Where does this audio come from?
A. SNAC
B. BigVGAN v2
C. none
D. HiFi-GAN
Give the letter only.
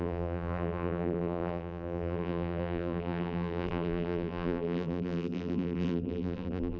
B